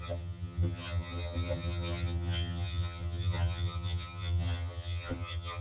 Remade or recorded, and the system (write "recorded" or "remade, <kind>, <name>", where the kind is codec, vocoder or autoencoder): remade, vocoder, HiFi-GAN